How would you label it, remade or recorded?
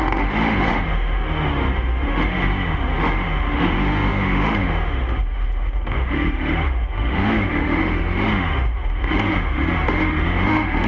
remade